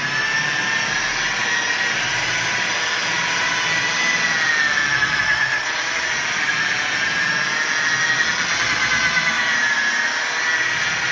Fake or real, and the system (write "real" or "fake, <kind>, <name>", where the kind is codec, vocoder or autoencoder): real